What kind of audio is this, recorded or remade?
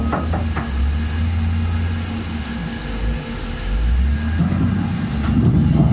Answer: recorded